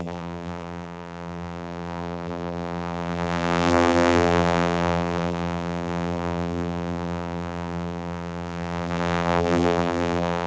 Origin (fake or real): fake